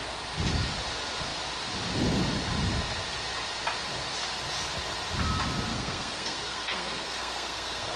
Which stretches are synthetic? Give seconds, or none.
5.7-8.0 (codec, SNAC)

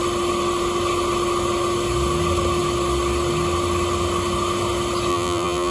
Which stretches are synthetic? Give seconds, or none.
5.1-5.7 (vocoder, BigVGAN v2)

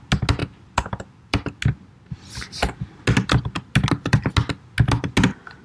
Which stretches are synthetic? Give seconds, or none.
0.4-1.6 (vocoder, BigVGAN v2)

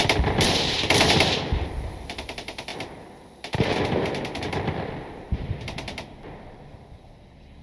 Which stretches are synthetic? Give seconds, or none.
0.0-2.7 (vocoder, BigVGAN v2); 4.4-7.6